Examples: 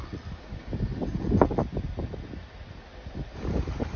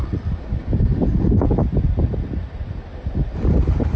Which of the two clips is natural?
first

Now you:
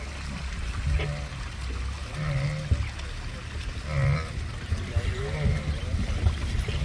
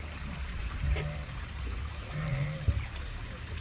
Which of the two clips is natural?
first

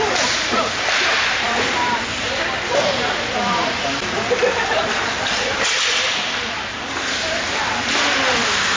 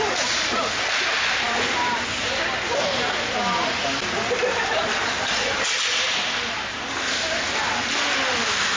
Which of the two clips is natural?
second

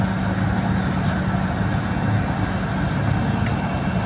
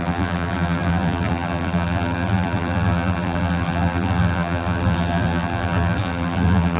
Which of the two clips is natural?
first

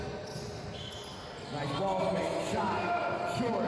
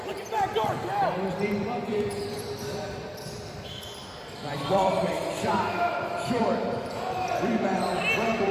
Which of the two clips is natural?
first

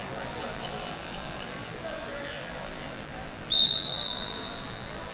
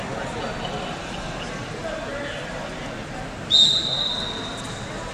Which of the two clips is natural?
second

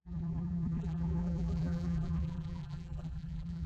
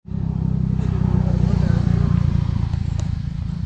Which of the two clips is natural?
second